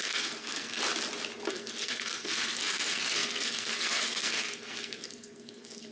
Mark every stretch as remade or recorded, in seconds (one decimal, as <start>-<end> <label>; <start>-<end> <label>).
0.0-0.8 remade; 0.8-1.5 recorded; 1.5-5.9 remade

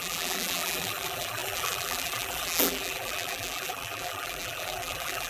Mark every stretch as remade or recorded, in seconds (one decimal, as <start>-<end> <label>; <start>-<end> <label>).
0.0-5.3 remade

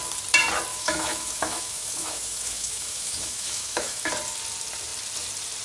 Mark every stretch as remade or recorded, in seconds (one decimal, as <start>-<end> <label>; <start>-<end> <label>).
0.0-0.7 recorded; 0.7-4.1 remade; 4.1-5.6 recorded

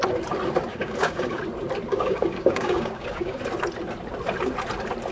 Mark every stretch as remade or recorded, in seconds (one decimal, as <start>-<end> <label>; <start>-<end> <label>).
0.0-0.7 recorded; 0.7-1.4 remade; 1.4-1.9 recorded; 1.9-3.4 remade; 3.4-5.1 recorded

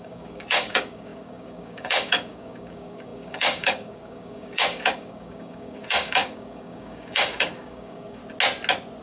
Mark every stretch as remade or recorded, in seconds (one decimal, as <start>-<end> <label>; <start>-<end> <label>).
0.0-8.2 remade; 8.2-9.0 recorded

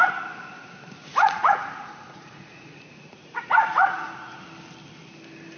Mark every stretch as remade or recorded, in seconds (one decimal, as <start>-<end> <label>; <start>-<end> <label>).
0.0-1.0 recorded; 1.0-4.4 remade; 4.4-5.6 recorded